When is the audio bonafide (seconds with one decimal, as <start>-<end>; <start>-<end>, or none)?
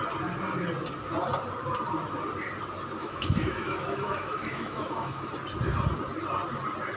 0.0-3.0; 5.3-7.0